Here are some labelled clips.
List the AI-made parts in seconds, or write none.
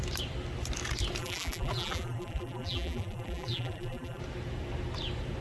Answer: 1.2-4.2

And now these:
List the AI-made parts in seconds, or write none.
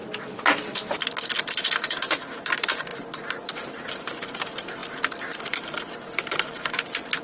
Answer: 1.7-7.2